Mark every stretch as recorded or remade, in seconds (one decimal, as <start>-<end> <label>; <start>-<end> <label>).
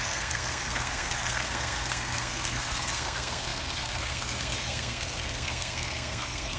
0.0-6.6 remade